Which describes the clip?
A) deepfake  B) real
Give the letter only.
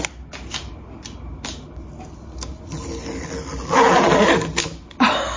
B